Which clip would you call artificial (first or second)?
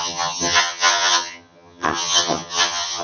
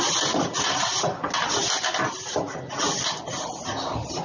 first